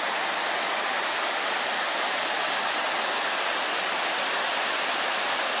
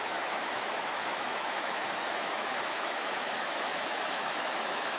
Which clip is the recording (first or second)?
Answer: first